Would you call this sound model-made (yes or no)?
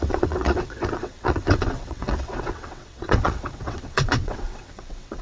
yes